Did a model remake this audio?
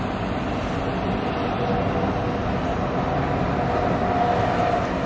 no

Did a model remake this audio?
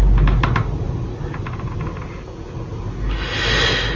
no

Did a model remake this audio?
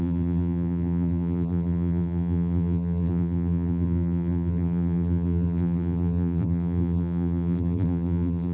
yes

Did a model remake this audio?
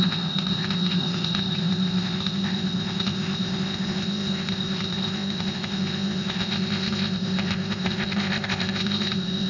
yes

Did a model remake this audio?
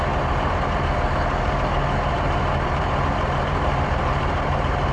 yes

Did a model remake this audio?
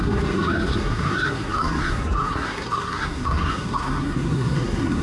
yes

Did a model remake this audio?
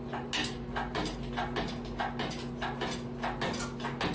no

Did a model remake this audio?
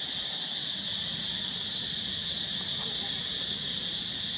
no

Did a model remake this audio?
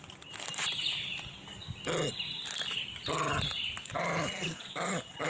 no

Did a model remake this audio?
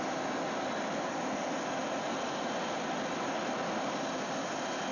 no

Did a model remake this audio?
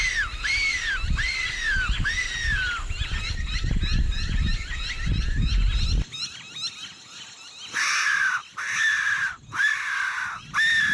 no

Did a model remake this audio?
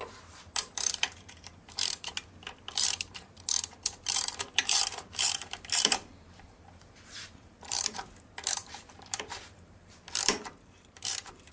yes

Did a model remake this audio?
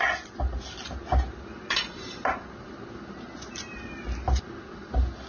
no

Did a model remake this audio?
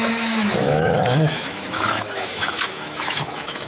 yes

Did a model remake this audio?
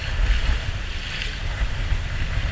no